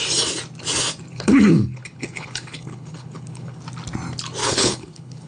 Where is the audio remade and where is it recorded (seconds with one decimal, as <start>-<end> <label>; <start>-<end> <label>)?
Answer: 0.0-1.1 recorded; 1.1-3.6 remade; 3.6-4.4 recorded; 4.4-5.3 remade